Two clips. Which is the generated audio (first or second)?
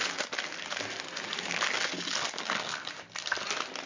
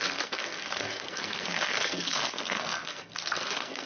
second